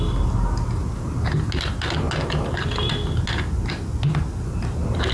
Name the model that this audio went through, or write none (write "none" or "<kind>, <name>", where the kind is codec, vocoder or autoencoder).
none